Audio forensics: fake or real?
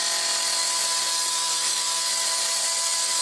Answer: real